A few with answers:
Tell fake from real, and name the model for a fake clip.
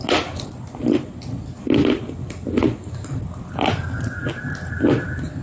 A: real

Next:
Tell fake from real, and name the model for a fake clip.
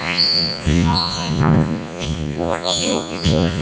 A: fake, vocoder, Vocos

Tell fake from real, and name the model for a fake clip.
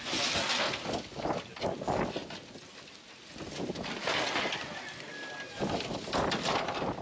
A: real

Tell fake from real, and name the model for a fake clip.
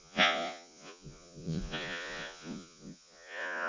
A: fake, vocoder, Vocos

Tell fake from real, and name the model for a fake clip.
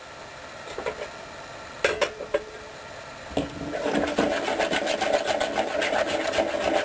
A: real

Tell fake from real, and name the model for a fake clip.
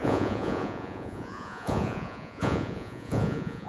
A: fake, vocoder, Vocos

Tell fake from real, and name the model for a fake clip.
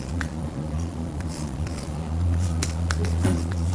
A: fake, vocoder, Vocos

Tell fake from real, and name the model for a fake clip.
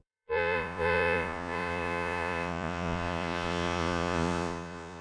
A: fake, vocoder, Vocos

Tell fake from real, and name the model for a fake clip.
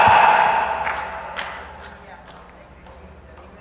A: real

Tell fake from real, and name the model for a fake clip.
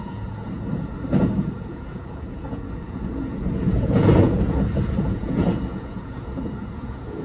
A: fake, vocoder, Vocos